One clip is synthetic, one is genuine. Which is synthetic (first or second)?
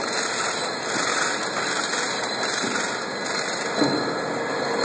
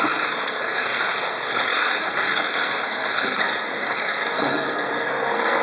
second